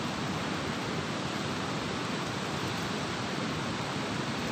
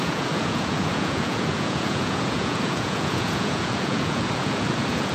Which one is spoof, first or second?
second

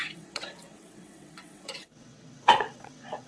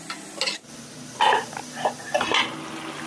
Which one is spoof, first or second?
first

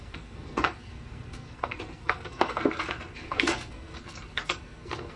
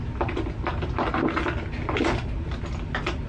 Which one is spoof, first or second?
first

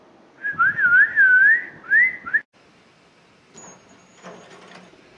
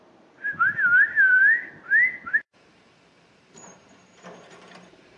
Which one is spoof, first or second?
second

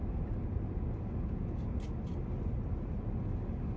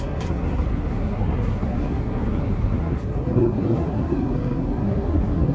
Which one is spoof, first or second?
second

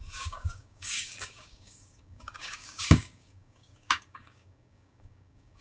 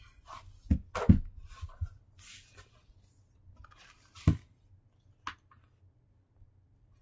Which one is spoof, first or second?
first